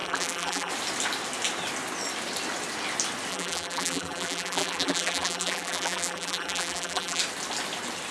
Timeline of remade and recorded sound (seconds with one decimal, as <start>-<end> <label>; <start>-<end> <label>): 0.0-0.7 remade; 0.7-3.3 recorded; 3.3-7.2 remade; 7.2-8.1 recorded